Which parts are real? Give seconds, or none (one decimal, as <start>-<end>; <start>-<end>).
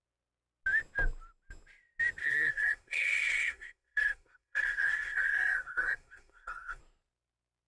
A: 0.0-2.2; 6.8-7.7